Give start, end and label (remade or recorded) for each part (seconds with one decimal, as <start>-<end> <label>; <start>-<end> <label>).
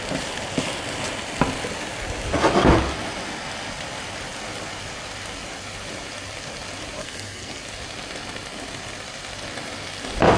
0.0-7.0 recorded; 7.0-7.6 remade; 7.6-10.4 recorded